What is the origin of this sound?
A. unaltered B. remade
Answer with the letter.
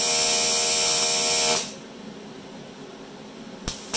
A